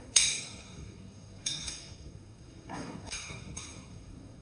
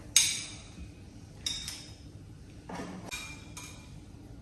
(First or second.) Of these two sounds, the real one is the second